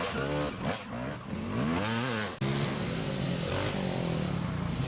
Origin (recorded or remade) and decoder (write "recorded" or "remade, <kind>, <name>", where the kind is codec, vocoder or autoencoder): recorded